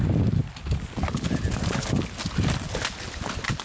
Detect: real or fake real